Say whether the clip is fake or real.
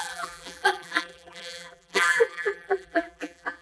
fake